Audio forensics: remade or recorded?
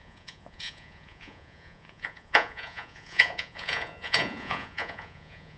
remade